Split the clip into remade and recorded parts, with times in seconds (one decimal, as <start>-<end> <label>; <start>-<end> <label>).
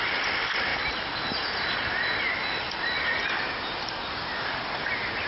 0.0-5.3 recorded